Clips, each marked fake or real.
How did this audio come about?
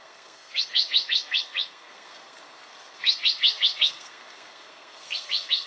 fake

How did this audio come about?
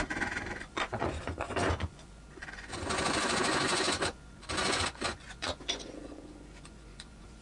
fake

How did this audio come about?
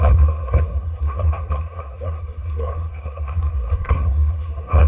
fake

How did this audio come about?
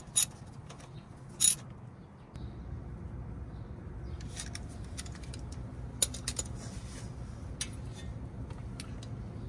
real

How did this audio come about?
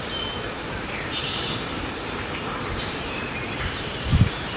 fake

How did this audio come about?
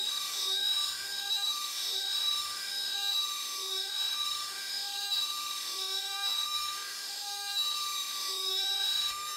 fake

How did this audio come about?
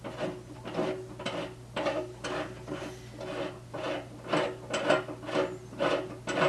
real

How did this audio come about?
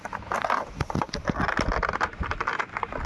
real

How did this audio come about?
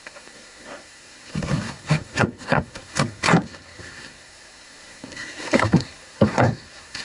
fake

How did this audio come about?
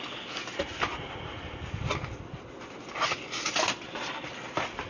real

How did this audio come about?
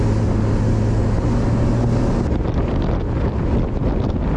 real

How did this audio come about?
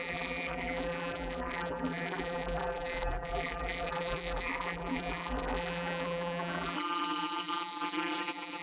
fake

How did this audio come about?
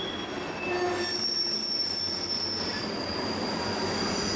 real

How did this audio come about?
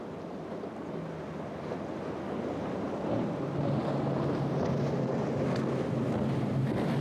real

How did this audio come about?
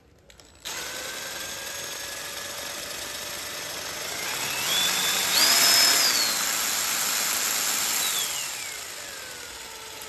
real